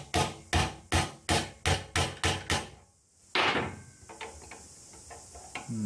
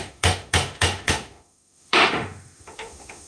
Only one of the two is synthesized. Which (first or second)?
second